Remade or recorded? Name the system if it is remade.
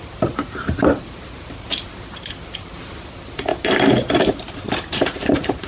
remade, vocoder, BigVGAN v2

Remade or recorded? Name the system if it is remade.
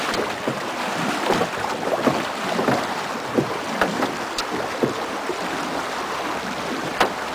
recorded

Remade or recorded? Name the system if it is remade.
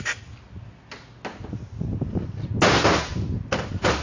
recorded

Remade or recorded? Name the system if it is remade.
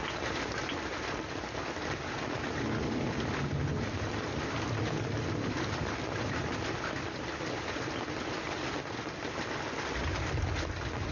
recorded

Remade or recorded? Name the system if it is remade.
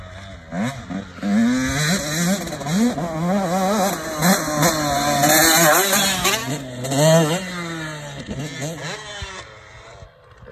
recorded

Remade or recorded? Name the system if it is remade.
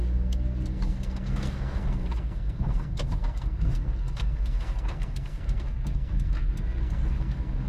remade, codec, SNAC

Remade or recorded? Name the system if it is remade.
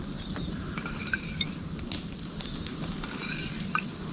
remade, vocoder, BigVGAN v2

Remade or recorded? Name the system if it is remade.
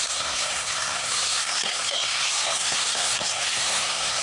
remade, codec, SNAC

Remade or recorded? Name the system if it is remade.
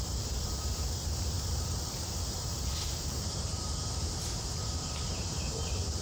remade, vocoder, BigVGAN v2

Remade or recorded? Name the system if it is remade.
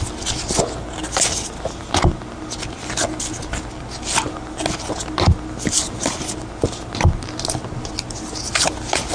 recorded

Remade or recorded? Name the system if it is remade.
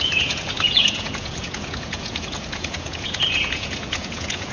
remade, vocoder, Vocos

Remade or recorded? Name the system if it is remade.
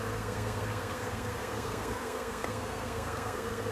remade, codec, SNAC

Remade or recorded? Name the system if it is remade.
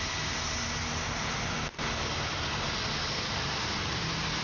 recorded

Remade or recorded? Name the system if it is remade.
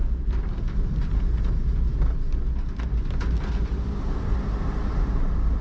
recorded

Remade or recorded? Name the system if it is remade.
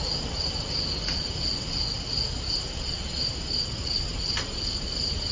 recorded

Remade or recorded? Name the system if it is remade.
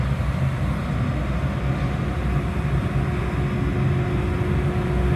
recorded